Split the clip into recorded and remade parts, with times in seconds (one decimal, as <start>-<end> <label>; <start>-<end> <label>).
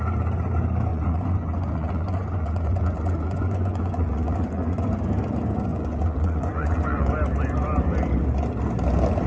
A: 0.0-0.9 recorded; 0.9-4.9 remade; 4.9-5.7 recorded; 5.7-7.1 remade; 7.1-9.3 recorded